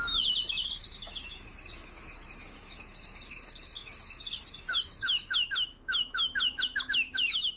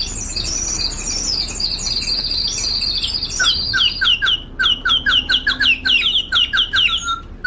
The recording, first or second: second